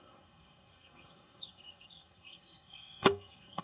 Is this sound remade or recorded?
remade